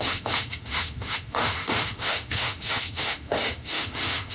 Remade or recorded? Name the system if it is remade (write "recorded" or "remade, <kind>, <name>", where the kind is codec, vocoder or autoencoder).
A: remade, autoencoder, DAC-VAE